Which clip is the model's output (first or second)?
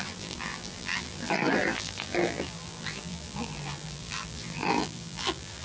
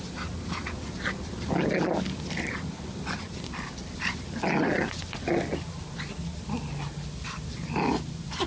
first